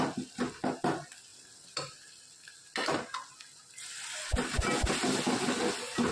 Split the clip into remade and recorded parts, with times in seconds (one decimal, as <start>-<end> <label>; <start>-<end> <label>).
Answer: 0.0-1.3 recorded; 1.3-2.1 remade; 2.1-2.6 recorded; 2.6-3.2 remade; 3.2-6.1 recorded